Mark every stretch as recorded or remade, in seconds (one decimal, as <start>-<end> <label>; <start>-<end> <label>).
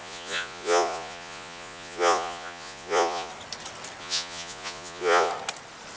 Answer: 0.0-3.3 remade; 3.3-4.0 recorded; 4.0-5.3 remade; 5.3-6.0 recorded